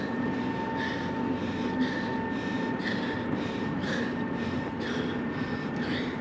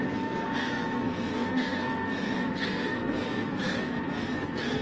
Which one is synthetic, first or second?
second